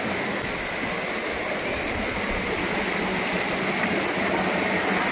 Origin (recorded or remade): recorded